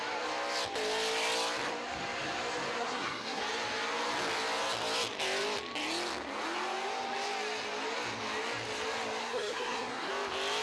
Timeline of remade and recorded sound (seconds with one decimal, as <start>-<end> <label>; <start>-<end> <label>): 0.0-2.8 recorded; 2.8-3.4 remade; 3.4-9.2 recorded; 9.2-10.1 remade; 10.1-10.6 recorded